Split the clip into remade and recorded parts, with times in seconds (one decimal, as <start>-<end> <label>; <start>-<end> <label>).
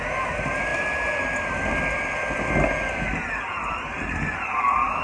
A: 0.0-5.0 recorded